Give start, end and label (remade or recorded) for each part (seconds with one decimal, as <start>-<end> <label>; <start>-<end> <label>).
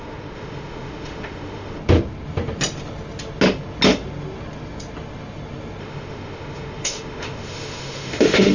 0.0-1.8 remade; 1.8-5.8 recorded; 5.8-8.5 remade